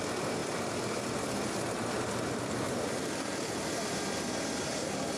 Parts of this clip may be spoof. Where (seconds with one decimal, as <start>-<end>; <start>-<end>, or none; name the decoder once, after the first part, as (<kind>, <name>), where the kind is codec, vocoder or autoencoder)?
none